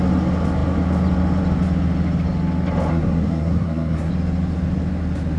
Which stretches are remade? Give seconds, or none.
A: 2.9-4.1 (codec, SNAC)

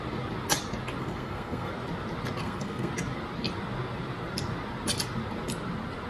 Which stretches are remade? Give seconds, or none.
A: 1.0-1.7 (codec, SNAC); 2.4-2.9

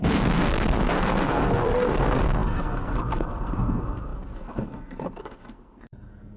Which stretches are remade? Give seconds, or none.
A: 0.0-6.4 (codec, SNAC)

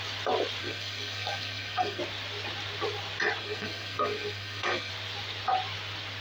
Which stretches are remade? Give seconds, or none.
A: 0.6-2.0 (codec, SNAC); 3.4-4.9

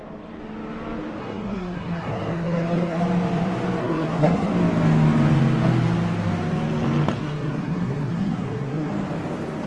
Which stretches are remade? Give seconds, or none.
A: 1.2-3.0 (codec, SNAC); 3.8-4.5; 7.2-8.9

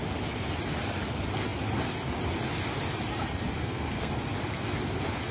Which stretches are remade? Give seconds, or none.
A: 3.6-4.1 (codec, SNAC)